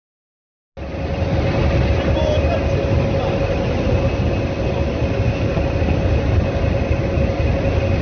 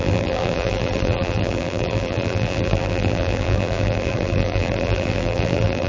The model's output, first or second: second